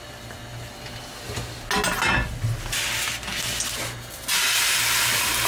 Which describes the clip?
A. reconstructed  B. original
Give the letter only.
B